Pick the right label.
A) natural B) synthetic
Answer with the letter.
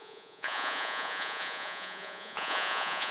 B